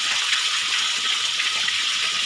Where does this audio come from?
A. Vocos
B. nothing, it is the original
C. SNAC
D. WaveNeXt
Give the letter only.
D